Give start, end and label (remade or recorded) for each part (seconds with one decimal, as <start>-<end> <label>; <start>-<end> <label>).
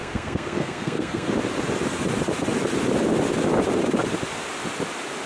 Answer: 0.0-1.3 remade; 1.3-5.3 recorded